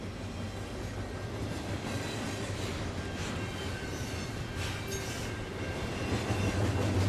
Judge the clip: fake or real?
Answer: real